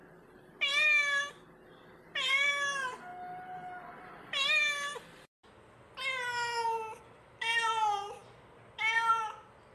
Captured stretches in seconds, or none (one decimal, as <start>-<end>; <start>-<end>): 3.1-4.0